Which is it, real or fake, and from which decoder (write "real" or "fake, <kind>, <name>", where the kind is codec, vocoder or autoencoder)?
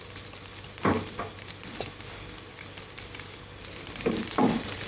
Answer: real